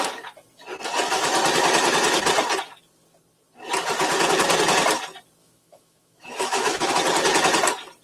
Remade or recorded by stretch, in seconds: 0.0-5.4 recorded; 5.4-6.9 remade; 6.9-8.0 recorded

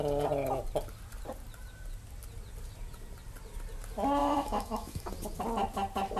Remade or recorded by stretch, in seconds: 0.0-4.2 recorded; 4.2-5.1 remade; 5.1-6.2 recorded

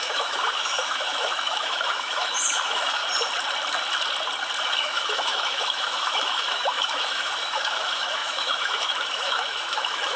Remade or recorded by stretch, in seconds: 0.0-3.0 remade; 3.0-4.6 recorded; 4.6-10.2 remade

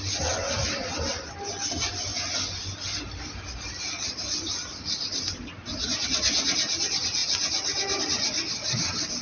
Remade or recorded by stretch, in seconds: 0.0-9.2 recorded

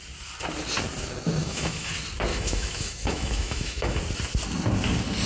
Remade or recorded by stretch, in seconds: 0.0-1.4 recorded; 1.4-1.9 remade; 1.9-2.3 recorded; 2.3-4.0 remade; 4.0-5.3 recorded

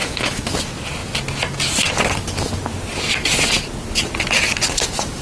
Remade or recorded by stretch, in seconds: 0.0-0.5 remade; 0.5-5.2 recorded

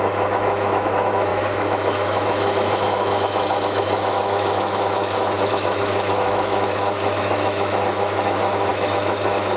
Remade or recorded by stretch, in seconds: 0.0-9.6 remade

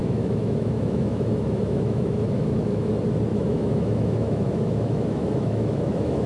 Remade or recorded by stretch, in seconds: 0.0-2.9 remade; 2.9-3.3 recorded; 3.3-6.3 remade